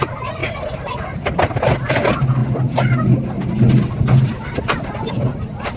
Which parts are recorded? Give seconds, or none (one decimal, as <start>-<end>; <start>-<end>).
0.0-5.8